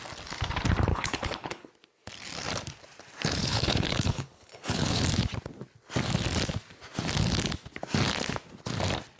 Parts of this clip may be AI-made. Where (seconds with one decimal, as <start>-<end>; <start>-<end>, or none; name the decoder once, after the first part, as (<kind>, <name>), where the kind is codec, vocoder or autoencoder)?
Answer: 0.9-1.7 (codec, HILCodec); 3.4-5.0